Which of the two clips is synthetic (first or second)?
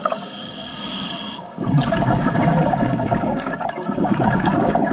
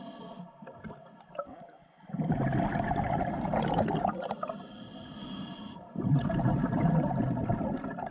first